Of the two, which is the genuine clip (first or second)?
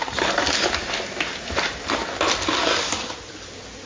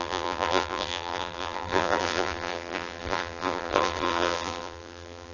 first